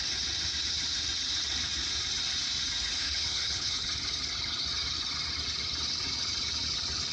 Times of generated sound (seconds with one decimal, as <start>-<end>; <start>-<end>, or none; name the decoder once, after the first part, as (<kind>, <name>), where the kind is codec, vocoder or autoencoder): 3.0-3.7 (codec, HILCodec)